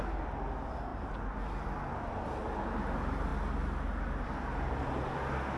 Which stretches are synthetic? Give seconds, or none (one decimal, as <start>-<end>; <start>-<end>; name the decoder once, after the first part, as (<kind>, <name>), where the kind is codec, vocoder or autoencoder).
none